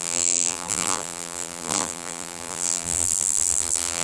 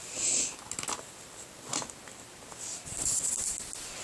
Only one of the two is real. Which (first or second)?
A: second